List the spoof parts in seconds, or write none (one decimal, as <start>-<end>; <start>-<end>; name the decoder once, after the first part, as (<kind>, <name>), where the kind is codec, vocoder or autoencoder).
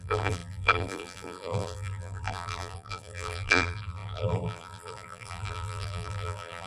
0.0-6.7 (vocoder, BigVGAN v2)